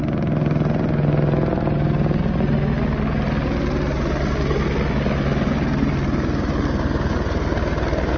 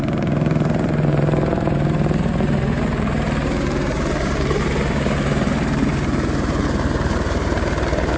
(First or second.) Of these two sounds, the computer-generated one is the second